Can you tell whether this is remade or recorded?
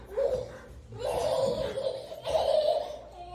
recorded